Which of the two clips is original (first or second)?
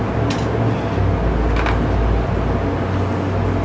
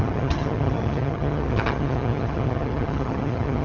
first